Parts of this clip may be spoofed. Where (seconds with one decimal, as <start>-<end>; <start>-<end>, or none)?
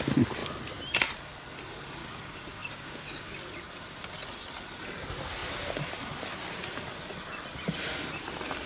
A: 2.0-3.4